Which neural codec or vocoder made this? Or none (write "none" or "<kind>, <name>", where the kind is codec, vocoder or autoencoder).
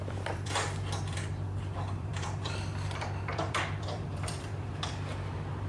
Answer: vocoder, BigVGAN v2